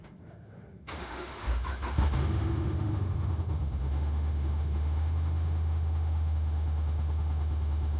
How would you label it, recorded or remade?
remade